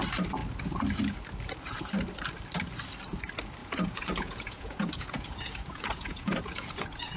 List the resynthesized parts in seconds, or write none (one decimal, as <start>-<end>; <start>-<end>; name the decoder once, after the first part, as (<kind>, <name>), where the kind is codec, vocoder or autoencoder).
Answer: 3.6-7.2 (vocoder, Vocos)

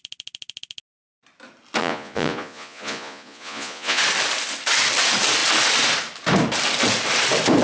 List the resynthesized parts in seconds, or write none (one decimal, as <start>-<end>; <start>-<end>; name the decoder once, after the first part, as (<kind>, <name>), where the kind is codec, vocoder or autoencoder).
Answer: 1.8-4.0 (vocoder, Vocos)

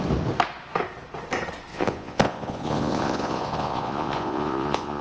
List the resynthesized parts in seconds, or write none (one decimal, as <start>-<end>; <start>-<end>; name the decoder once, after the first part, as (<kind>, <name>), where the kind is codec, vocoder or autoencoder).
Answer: 1.7-5.0 (vocoder, Vocos)

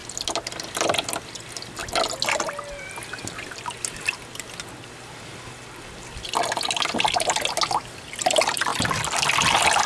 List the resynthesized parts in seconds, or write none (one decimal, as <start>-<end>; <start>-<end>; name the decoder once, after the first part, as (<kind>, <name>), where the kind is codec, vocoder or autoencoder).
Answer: none

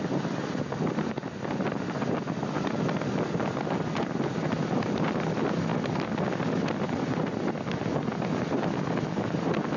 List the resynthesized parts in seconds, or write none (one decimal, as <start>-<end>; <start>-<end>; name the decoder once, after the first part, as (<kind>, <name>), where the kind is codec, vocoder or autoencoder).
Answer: none

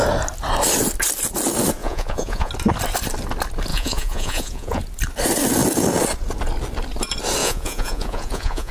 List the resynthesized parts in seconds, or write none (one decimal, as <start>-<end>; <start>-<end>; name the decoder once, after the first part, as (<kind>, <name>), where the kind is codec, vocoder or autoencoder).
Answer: 1.8-2.5 (vocoder, Vocos); 3.7-4.8; 7.4-8.7

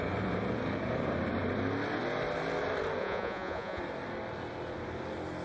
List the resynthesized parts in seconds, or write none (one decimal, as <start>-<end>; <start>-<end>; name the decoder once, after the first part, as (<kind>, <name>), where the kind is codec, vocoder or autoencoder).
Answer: 3.0-3.8 (vocoder, Vocos)